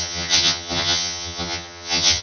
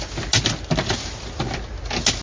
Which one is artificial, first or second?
first